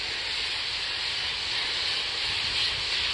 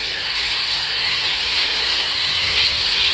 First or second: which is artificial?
second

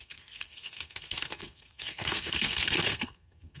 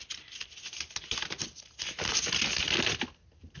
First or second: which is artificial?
first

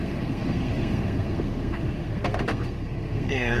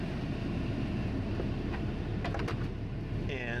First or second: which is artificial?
first